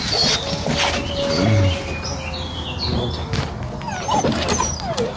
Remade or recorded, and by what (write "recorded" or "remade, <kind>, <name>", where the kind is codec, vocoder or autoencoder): recorded